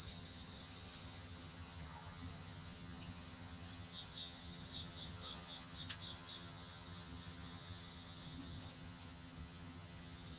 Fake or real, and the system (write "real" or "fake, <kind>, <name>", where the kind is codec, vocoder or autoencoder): fake, vocoder, HiFi-GAN